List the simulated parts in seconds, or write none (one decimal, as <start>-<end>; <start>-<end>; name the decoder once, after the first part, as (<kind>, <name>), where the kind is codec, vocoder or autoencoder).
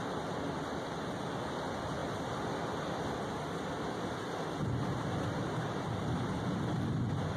none